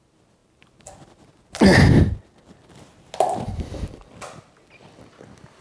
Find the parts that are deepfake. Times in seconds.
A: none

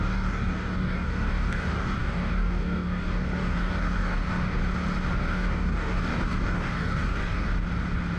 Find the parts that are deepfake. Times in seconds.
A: 0.0-4.6 (codec, DAC); 5.2-7.5

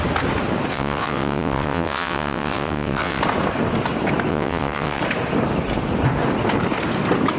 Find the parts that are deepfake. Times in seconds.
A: 0.7-3.2 (vocoder, WaveNeXt); 4.3-5.0

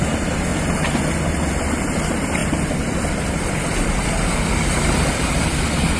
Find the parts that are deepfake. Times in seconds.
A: 0.0-0.5 (vocoder, BigVGAN v2); 1.8-2.4; 3.1-6.0

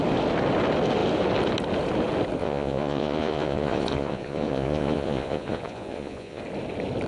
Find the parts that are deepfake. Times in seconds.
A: 2.4-6.4 (vocoder, Vocos)

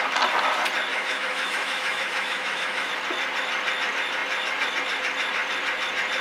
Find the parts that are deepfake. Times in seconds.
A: 0.9-2.9 (autoencoder, DAC-VAE)

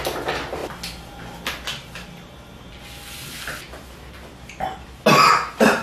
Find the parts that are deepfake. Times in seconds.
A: none